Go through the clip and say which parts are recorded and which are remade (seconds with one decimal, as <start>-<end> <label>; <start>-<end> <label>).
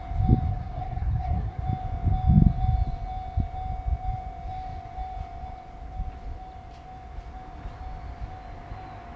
0.0-0.5 recorded; 0.5-1.6 remade; 1.6-9.2 recorded